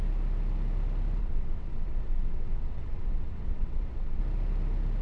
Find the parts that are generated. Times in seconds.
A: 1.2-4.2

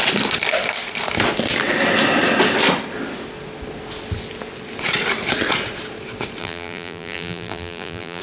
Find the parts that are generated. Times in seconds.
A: 6.4-8.2

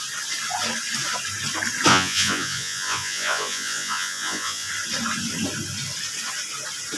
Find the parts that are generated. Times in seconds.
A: 1.9-4.7